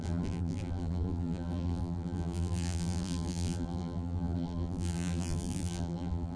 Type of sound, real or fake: fake